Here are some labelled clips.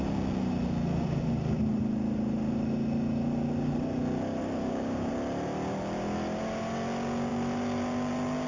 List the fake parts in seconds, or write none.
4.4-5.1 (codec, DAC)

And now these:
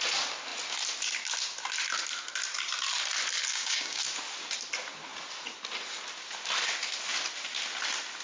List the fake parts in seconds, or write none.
3.5-4.0 (codec, DAC)

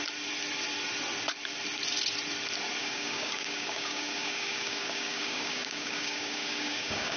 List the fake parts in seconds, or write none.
2.8-7.2 (codec, DAC)

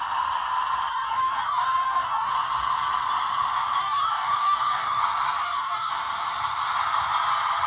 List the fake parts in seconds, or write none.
0.9-2.3 (codec, DAC); 3.8-5.0; 5.4-5.9

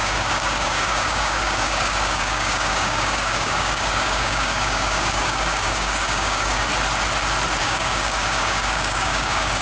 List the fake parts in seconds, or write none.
0.0-6.7 (codec, DAC); 7.6-9.6

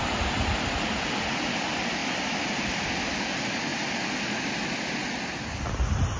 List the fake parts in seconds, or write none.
none

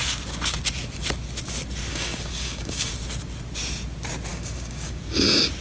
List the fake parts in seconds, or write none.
1.9-2.9 (codec, DAC); 4.3-5.0